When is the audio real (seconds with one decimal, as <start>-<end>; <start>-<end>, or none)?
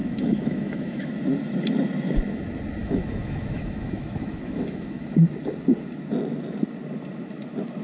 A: 1.1-2.8; 5.2-7.8